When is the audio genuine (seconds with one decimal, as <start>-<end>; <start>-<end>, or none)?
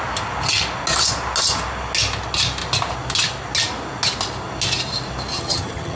0.0-5.3